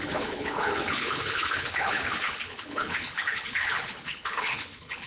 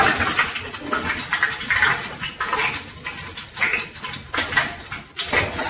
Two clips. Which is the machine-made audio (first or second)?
first